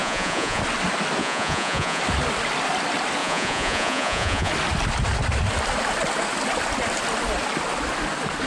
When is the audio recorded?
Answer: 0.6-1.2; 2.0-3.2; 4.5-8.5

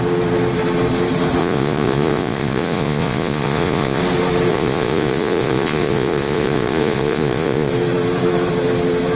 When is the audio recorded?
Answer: 0.0-1.4; 4.0-4.5; 7.7-9.2

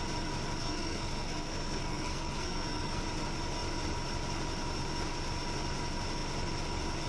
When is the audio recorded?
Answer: 0.0-0.6; 3.0-7.1

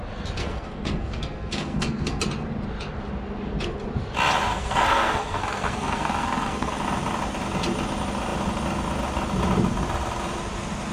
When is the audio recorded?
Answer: 0.0-0.4; 2.2-4.5; 6.7-10.9